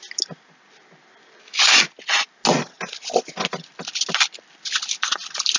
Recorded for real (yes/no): yes